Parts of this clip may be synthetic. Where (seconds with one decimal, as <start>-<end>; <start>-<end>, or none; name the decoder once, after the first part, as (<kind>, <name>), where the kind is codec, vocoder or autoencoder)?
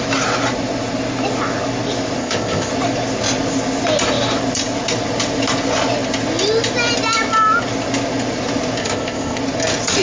2.2-2.7 (codec, ZipCodec); 8.8-9.4